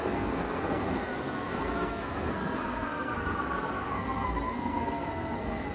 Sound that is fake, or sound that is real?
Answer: fake